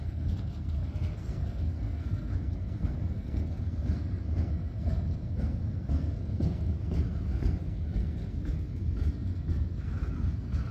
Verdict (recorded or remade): remade